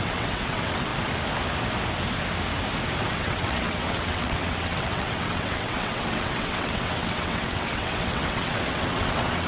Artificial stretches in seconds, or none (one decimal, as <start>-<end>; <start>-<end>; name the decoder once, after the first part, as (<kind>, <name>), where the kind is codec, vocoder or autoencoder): 0.0-0.9 (vocoder, WaveNeXt); 3.1-9.5